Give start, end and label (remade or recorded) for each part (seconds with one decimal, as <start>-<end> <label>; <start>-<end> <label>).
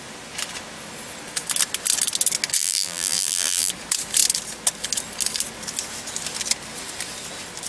0.0-2.6 recorded; 2.6-3.7 remade; 3.7-7.7 recorded